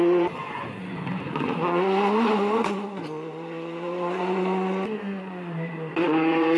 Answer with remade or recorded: remade